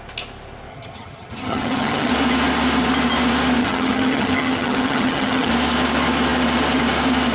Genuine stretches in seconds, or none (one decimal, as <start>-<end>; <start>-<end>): 0.0-0.7; 2.1-3.6; 5.5-7.3